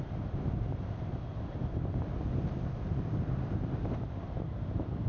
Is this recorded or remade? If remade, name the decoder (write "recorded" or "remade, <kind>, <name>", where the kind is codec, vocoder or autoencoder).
remade, vocoder, BigVGAN v2